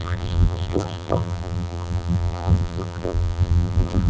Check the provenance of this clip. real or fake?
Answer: fake